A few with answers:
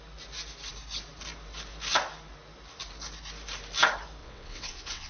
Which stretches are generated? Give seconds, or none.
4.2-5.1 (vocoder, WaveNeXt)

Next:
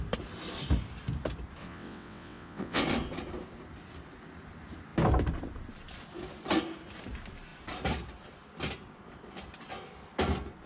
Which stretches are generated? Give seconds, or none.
1.6-2.8 (vocoder, WaveNeXt)

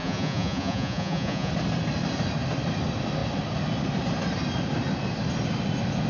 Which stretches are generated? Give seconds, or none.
0.0-1.5 (vocoder, Vocos)

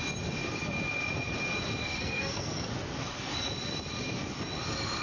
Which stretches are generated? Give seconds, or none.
1.8-2.7 (codec, SNAC)